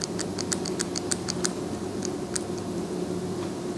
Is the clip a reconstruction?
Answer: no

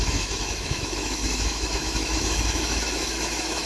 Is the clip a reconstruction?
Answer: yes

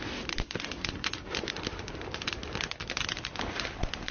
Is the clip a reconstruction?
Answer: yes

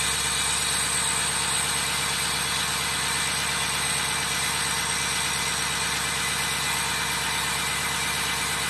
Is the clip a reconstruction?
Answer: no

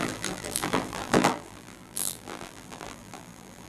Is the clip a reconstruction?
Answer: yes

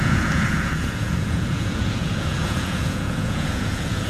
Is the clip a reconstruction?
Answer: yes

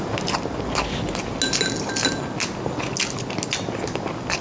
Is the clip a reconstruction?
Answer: no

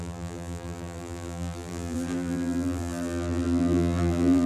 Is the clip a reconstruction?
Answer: yes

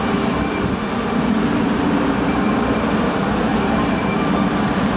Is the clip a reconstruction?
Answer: yes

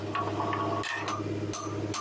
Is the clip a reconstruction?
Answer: no